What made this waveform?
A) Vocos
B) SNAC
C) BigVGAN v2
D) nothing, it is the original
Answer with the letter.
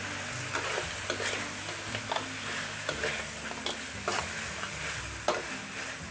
D